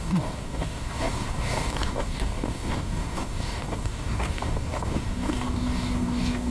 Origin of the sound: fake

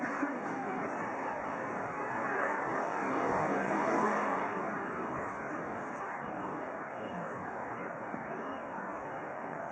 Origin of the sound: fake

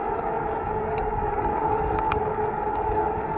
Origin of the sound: fake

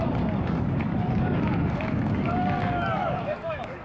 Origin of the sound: fake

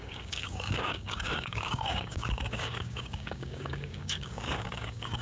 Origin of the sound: fake